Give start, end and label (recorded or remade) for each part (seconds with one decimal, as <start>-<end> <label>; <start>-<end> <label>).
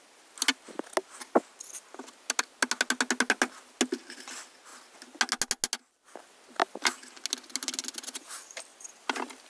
0.0-9.5 recorded